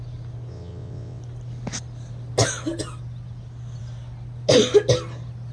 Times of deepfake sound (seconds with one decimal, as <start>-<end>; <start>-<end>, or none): 0.5-1.2